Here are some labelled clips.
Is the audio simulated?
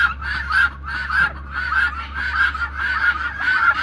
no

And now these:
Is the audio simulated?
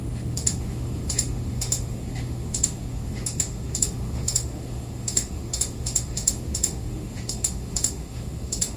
yes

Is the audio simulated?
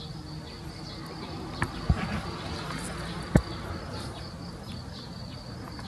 no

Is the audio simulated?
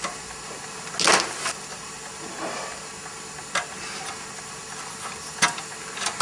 no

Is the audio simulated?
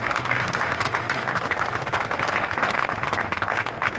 yes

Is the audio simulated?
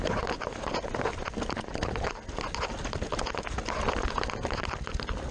no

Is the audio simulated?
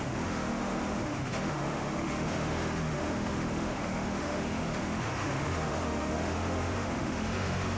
yes